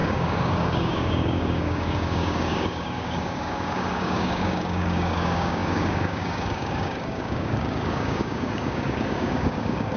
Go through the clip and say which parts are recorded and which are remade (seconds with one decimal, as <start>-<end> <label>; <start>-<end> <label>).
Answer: 0.0-10.0 remade